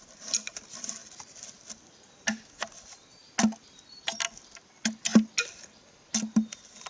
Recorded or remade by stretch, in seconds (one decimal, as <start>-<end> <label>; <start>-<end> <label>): 0.0-6.9 recorded